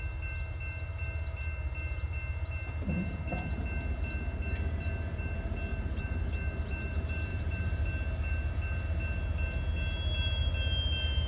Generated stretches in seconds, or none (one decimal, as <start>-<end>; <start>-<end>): 5.7-6.2; 7.3-7.8